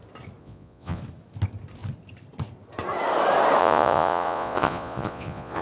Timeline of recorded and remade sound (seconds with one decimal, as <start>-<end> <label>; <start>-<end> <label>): 0.0-0.4 recorded; 0.4-1.0 remade; 1.0-3.6 recorded; 3.6-5.6 remade